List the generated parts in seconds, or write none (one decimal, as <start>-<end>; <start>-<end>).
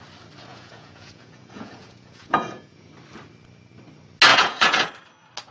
0.5-2.9; 4.3-4.9